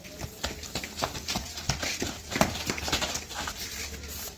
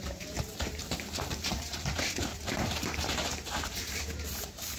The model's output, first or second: second